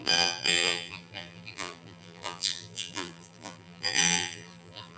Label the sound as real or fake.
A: fake